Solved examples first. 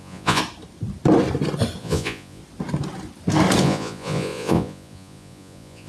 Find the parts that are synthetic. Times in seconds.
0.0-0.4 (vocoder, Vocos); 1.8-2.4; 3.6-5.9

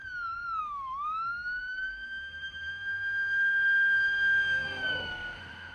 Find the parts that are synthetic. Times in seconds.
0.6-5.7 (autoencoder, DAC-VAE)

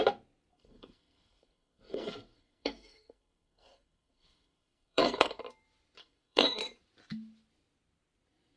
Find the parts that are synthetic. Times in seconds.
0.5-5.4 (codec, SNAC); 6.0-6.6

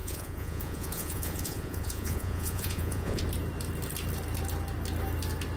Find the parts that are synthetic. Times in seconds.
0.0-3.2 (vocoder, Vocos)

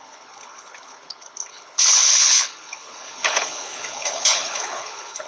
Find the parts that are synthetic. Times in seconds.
0.0-5.3 (codec, HILCodec)

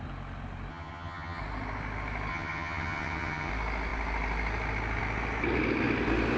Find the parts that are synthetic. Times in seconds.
0.7-1.4 (vocoder, HiFi-GAN); 2.3-3.5